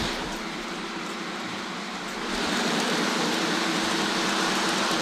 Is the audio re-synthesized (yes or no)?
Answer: yes